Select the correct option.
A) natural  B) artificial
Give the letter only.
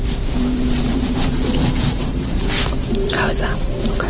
B